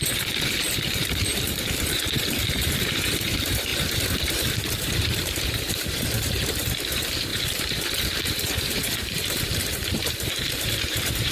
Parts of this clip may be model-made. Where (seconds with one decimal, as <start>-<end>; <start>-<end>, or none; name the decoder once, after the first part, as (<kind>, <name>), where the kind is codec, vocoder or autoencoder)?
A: 0.0-11.3 (vocoder, BigVGAN v2)